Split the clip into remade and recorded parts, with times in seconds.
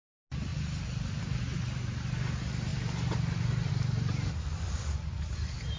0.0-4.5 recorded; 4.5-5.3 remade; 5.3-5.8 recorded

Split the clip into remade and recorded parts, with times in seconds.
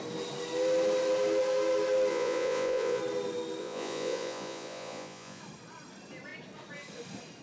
0.0-2.1 recorded; 2.1-3.0 remade; 3.0-3.6 recorded; 3.6-5.4 remade; 5.4-7.4 recorded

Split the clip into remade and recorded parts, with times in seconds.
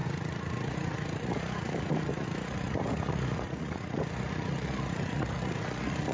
0.0-6.1 remade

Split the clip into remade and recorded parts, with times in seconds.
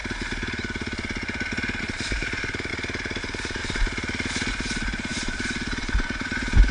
0.0-1.8 recorded; 1.8-2.7 remade; 2.7-3.2 recorded; 3.2-3.6 remade; 3.6-4.5 recorded; 4.5-6.7 remade